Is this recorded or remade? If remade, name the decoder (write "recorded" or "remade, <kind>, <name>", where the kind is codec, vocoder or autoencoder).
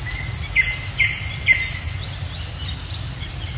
recorded